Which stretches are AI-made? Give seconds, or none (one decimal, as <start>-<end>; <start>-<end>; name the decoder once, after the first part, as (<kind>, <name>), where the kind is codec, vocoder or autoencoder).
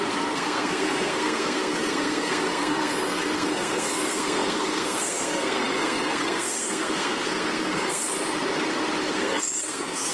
0.0-8.0 (codec, SNAC); 9.0-10.1